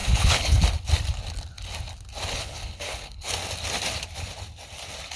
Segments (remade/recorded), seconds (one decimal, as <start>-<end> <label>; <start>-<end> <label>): 0.0-0.6 remade; 0.6-2.3 recorded; 2.3-3.3 remade; 3.3-5.2 recorded